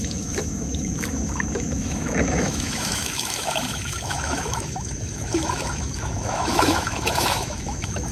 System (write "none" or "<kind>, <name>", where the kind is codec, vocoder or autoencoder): autoencoder, DAC-VAE